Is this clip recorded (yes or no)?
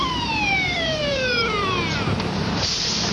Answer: no